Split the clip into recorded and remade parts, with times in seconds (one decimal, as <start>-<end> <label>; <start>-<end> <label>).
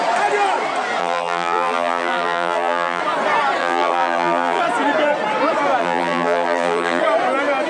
0.0-1.0 recorded; 1.0-3.0 remade; 3.0-3.6 recorded; 3.6-4.6 remade; 4.6-5.8 recorded; 5.8-7.0 remade; 7.0-7.7 recorded